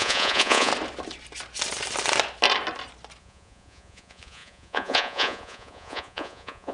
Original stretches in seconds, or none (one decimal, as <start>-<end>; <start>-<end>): 0.7-3.2